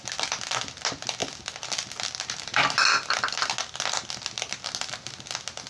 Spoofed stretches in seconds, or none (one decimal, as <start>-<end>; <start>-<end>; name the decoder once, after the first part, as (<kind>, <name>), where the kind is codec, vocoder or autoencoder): none